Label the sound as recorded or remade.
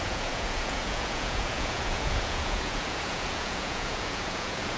remade